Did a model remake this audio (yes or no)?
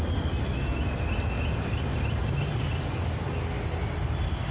no